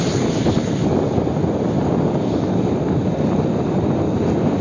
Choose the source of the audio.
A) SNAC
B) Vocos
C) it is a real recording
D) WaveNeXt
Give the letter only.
C